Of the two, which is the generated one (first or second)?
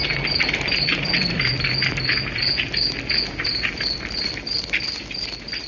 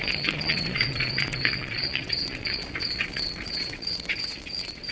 second